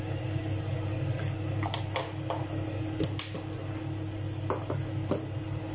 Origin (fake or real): real